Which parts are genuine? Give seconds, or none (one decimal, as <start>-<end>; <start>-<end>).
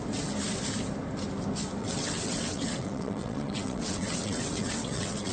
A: 0.0-1.8